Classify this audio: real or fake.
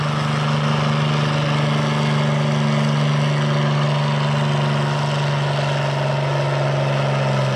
real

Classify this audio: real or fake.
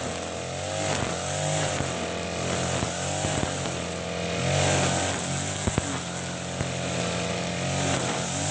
real